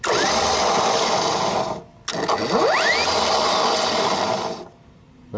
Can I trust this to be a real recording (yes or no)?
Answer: yes